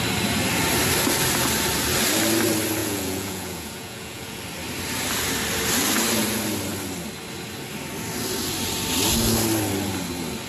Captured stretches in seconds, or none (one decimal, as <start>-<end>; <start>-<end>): 0.0-2.8; 4.4-10.5